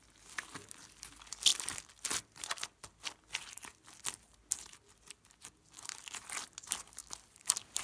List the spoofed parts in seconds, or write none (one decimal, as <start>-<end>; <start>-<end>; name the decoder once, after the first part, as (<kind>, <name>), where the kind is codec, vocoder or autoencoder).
none